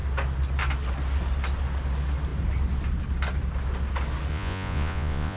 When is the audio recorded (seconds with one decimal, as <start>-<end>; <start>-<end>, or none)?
0.0-4.3

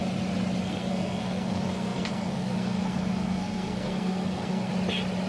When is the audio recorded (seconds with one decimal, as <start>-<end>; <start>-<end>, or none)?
0.0-0.6; 4.7-5.3